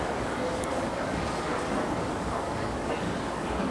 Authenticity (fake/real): fake